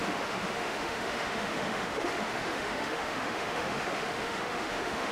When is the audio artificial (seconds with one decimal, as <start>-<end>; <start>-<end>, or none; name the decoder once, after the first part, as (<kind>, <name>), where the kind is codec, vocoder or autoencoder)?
0.0-5.1 (autoencoder, DAC-VAE)